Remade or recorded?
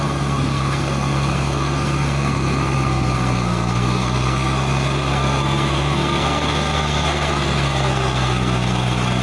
remade